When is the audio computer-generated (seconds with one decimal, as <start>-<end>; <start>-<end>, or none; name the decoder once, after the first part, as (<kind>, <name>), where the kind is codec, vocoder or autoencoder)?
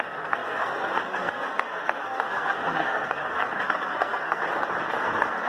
0.0-4.4 (codec, SNAC); 5.0-5.5